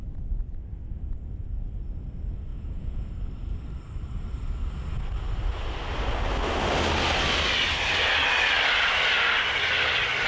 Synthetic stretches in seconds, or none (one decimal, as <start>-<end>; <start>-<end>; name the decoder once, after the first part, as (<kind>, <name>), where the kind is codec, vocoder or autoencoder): 2.5-3.1 (vocoder, Vocos)